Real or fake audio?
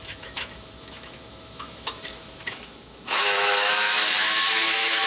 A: fake